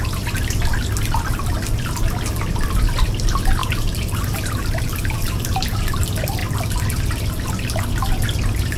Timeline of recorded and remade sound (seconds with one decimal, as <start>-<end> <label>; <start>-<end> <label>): 0.0-3.6 recorded; 3.6-6.0 remade; 6.0-8.8 recorded